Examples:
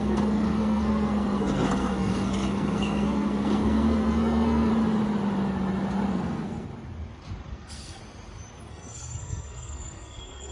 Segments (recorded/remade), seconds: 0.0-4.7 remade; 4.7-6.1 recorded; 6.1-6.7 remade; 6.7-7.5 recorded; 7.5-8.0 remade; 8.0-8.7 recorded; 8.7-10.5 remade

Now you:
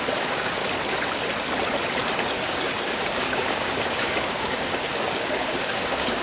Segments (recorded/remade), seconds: 0.0-0.6 remade; 0.6-2.3 recorded; 2.3-6.2 remade

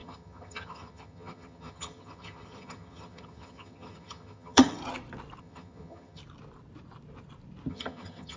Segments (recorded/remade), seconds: 0.0-4.8 remade; 4.8-5.4 recorded; 5.4-6.2 remade; 6.2-7.7 recorded; 7.7-8.4 remade

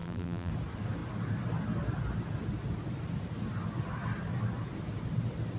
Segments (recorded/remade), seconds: 0.0-0.5 remade; 0.5-5.6 recorded

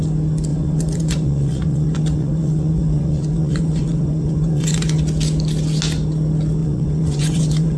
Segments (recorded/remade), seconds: 0.0-0.5 recorded; 0.5-5.0 remade; 5.0-6.6 recorded; 6.6-7.8 remade

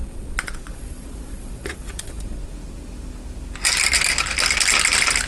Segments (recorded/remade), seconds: 0.0-2.4 remade; 2.4-5.3 recorded

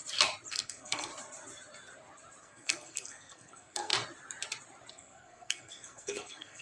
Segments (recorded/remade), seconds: 0.0-0.5 recorded; 0.5-1.1 remade; 1.1-2.4 recorded; 2.4-3.9 remade; 3.9-4.9 recorded; 4.9-6.6 remade

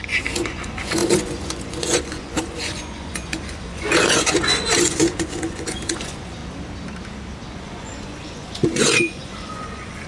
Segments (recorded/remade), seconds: 0.0-6.4 remade; 6.4-7.5 recorded; 7.5-10.1 remade